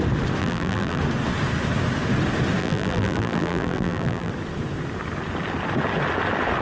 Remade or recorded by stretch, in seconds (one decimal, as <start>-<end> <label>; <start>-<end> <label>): 0.0-0.4 recorded; 0.4-1.0 remade; 1.0-2.6 recorded; 2.6-4.3 remade; 4.3-6.6 recorded